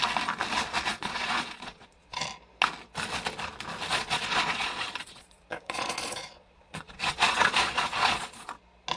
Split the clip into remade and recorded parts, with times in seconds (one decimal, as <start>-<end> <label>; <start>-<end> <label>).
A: 0.0-0.9 recorded; 0.9-2.2 remade; 2.2-3.9 recorded; 3.9-8.5 remade; 8.5-9.0 recorded